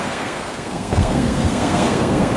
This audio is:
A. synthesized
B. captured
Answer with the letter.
A